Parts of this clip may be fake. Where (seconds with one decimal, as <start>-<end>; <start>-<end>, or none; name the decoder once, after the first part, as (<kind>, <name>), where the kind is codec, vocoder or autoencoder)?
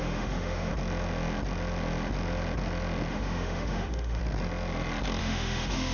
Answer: 0.0-0.7 (autoencoder, DAC-VAE); 3.1-4.2; 5.2-5.9